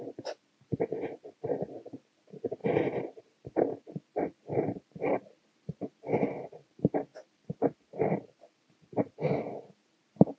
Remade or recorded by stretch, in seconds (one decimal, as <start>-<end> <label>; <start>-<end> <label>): 0.0-10.4 recorded